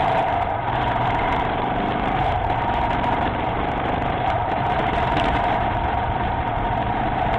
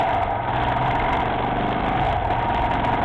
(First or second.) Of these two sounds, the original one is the second